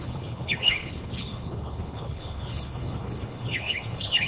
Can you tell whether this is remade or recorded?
remade